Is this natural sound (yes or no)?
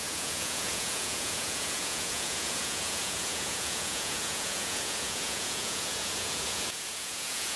no